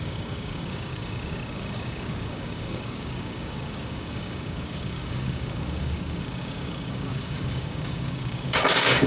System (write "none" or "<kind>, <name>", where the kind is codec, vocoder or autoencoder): codec, DAC